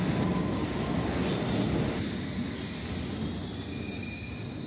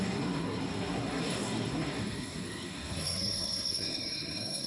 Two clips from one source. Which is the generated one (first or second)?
second